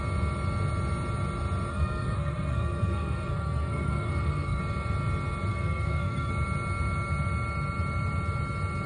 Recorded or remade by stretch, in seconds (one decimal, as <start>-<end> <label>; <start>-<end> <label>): 0.0-1.7 recorded; 1.7-4.6 remade; 4.6-5.5 recorded; 5.5-6.3 remade; 6.3-8.9 recorded